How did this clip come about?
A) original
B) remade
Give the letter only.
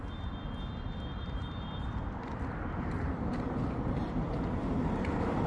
B